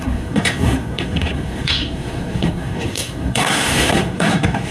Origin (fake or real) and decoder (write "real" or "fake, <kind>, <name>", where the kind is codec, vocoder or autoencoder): fake, codec, SNAC